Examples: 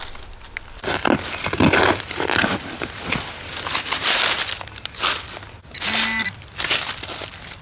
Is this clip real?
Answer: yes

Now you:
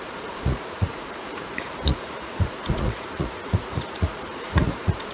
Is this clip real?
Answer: no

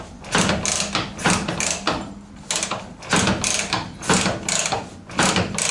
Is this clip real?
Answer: yes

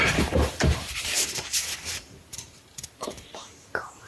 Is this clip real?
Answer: no